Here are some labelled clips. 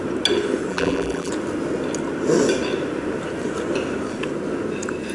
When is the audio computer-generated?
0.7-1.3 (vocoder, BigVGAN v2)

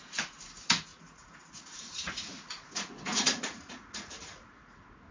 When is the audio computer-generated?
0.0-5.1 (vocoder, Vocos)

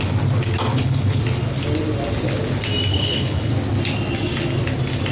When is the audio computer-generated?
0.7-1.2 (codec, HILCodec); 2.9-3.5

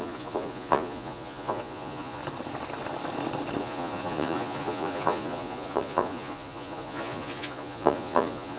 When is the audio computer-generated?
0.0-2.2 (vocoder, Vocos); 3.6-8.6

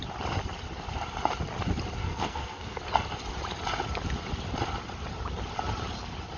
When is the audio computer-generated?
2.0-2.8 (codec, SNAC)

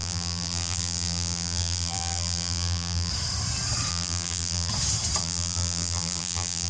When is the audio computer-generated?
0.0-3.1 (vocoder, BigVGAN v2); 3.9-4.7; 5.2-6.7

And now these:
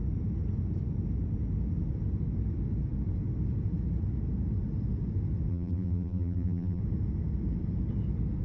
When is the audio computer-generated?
5.5-6.8 (vocoder, BigVGAN v2)

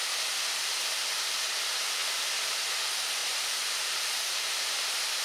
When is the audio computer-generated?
3.2-4.8 (vocoder, BigVGAN v2)